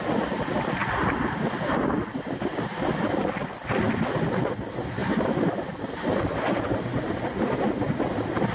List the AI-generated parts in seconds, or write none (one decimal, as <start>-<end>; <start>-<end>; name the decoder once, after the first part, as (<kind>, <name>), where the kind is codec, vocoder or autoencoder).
none